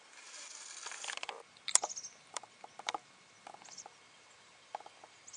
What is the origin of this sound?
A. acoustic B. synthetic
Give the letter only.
A